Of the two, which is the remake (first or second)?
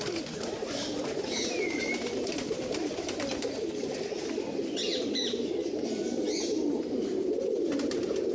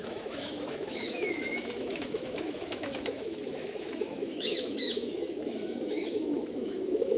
second